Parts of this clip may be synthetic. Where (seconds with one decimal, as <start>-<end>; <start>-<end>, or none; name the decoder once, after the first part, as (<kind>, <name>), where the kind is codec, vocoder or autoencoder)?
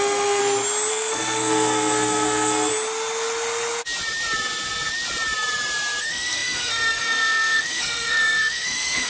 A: 0.0-0.4 (codec, SNAC); 0.9-2.7; 6.0-9.1